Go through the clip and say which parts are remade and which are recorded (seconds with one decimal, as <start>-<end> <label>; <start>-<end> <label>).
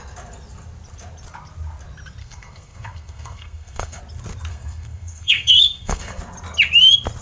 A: 0.0-2.2 recorded; 2.2-4.0 remade; 4.0-4.5 recorded; 4.5-6.2 remade; 6.2-7.2 recorded